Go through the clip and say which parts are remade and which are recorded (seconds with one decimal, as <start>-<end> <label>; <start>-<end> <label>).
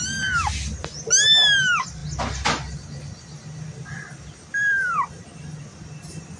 0.0-6.4 recorded